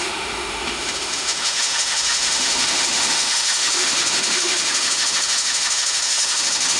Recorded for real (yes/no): no